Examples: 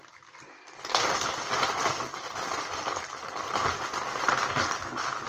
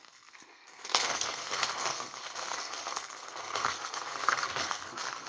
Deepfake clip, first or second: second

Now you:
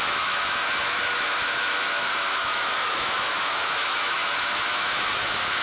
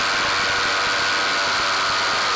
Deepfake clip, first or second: first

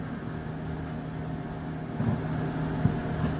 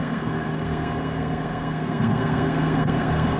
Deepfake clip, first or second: second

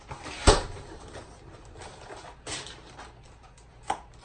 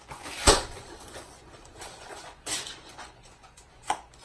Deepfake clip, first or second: second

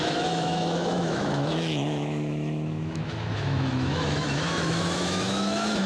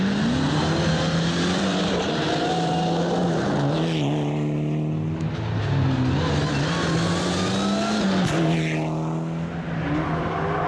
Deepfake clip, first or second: first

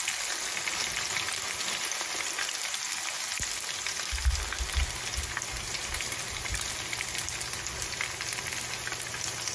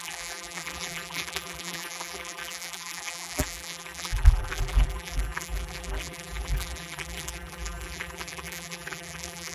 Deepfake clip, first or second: second